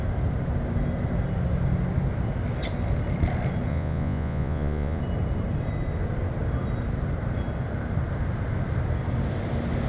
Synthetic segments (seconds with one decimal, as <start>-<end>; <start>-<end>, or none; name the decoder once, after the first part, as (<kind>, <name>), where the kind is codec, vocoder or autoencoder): 3.7-5.0 (vocoder, Vocos)